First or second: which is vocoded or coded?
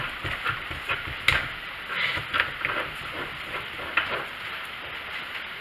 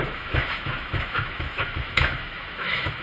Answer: second